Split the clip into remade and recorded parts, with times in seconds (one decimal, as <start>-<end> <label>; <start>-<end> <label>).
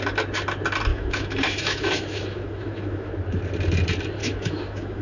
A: 0.0-0.9 recorded; 0.9-3.1 remade; 3.1-4.2 recorded; 4.2-5.0 remade